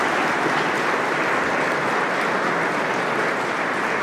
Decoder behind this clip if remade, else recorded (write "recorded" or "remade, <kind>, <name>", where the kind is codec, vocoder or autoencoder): recorded